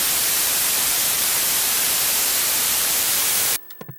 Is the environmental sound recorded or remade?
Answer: remade